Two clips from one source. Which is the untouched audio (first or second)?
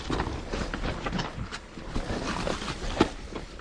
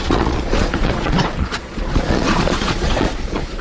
first